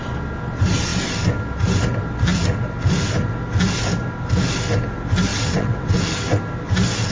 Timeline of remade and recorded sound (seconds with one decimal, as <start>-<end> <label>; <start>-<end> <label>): 0.0-5.3 recorded; 5.3-5.9 remade; 5.9-7.1 recorded